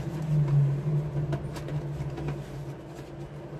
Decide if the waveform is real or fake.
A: real